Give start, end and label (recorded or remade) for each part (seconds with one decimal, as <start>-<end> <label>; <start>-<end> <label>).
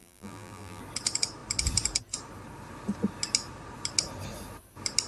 0.0-0.8 remade; 0.8-5.1 recorded